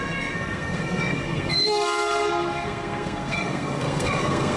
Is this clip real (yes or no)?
no